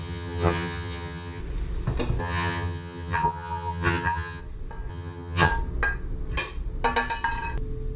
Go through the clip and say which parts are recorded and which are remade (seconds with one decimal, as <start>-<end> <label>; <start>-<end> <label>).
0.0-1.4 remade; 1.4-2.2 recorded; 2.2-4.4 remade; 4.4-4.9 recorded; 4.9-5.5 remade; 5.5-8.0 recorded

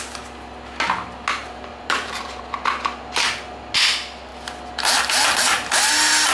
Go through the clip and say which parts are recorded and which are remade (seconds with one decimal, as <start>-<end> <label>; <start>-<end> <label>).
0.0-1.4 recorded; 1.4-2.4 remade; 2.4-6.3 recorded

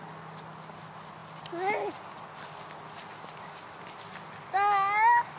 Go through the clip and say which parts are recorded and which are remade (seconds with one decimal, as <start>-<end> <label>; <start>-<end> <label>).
0.0-5.4 recorded

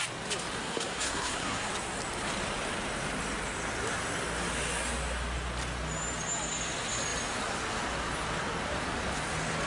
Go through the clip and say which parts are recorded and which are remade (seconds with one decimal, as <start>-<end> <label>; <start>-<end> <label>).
0.0-0.6 recorded; 0.6-1.7 remade; 1.7-9.7 recorded